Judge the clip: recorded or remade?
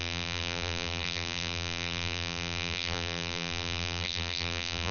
remade